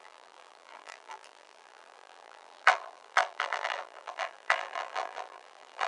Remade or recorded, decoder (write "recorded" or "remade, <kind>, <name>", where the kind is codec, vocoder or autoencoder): remade, vocoder, BigVGAN v2